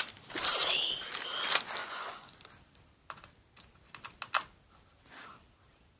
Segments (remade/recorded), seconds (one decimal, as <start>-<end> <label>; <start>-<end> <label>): 0.0-1.8 recorded; 1.8-2.4 remade; 2.4-6.0 recorded